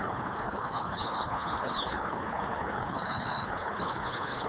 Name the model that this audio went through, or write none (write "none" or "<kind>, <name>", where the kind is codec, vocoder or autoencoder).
codec, HILCodec